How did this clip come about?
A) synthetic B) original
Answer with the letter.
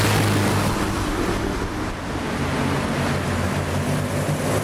B